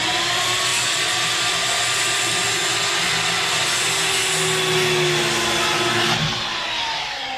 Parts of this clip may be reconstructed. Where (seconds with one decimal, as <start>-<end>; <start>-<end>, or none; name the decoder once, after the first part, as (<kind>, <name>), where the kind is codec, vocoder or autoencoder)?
none